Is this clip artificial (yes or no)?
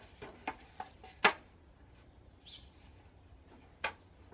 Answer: no